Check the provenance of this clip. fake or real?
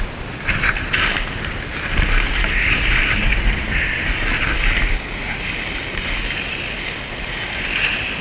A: real